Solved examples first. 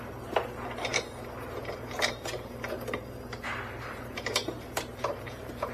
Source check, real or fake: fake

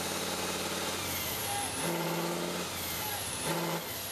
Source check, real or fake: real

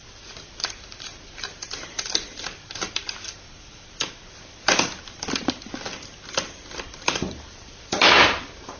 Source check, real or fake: fake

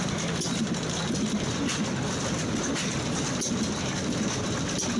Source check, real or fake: real